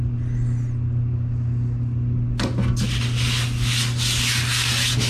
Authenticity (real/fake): real